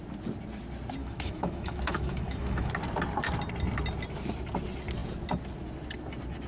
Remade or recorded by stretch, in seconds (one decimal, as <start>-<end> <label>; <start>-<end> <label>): 0.0-1.0 recorded; 1.0-2.7 remade; 2.7-6.5 recorded

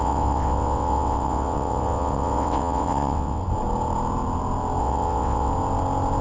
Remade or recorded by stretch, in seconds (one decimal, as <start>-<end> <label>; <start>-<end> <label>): 0.0-3.4 remade; 3.4-4.8 recorded; 4.8-5.5 remade; 5.5-6.2 recorded

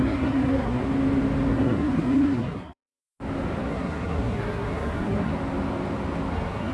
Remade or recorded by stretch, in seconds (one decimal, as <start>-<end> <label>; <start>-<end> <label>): 0.0-0.8 remade; 0.8-1.5 recorded; 1.5-3.0 remade; 3.0-3.6 recorded; 3.6-5.3 remade; 5.3-6.3 recorded; 6.3-6.7 remade

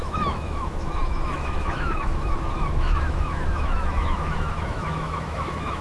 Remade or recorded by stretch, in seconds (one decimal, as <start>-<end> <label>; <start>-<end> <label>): 0.0-5.8 remade

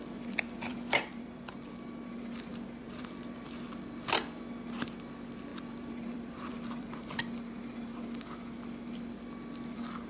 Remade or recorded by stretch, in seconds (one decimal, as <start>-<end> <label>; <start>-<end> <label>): 0.0-0.7 recorded; 0.7-1.5 remade; 1.5-2.5 recorded; 2.5-3.4 remade; 3.4-5.5 recorded; 5.5-7.2 remade; 7.2-10.1 recorded